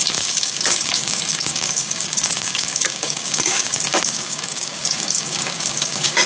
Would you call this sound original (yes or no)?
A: no